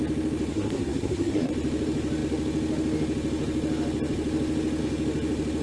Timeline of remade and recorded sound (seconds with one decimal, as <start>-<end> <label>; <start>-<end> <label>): 0.0-0.5 recorded; 0.5-1.5 remade; 1.5-5.6 recorded